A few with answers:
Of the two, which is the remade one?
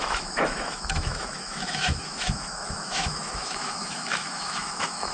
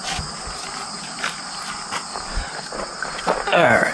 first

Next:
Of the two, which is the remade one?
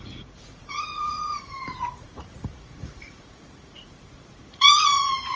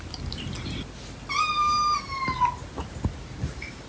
first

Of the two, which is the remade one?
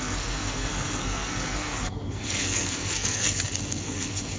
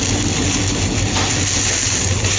first